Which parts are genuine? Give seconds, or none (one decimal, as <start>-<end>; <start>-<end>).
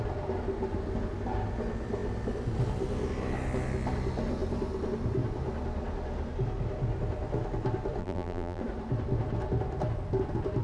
0.0-8.0; 8.6-10.6